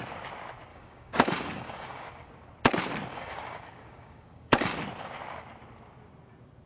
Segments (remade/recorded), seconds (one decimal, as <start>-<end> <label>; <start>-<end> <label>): 0.0-0.7 recorded; 0.7-2.3 remade; 2.3-3.1 recorded; 3.1-4.8 remade; 4.8-6.7 recorded